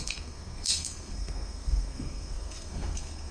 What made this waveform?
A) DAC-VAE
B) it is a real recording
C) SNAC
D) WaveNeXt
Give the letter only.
C